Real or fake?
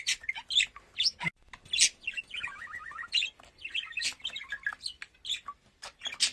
real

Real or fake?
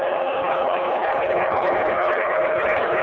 fake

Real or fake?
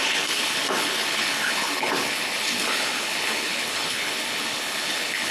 fake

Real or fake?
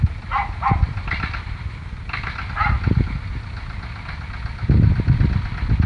real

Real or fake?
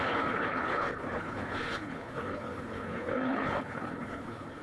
fake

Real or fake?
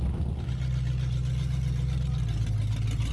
real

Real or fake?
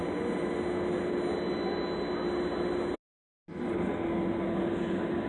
real